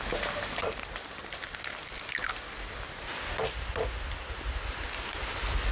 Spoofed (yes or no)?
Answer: no